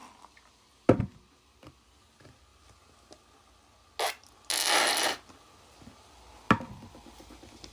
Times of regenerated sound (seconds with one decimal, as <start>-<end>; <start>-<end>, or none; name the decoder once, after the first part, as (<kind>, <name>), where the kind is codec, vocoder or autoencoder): none